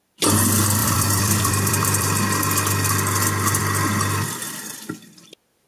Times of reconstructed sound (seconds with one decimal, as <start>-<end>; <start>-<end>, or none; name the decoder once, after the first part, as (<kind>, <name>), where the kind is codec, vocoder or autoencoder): 0.8-2.2 (vocoder, BigVGAN v2)